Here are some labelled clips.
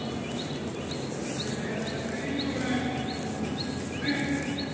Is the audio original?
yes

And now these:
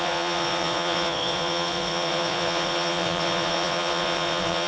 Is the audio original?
no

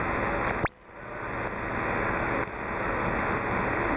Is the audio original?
yes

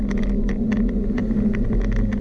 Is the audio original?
yes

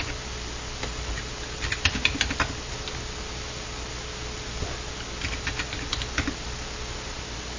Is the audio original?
yes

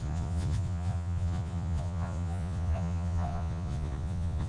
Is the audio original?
no